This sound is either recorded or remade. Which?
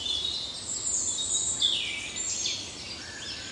recorded